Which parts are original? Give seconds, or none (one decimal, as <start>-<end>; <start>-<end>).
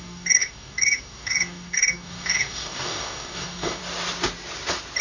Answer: 3.8-5.0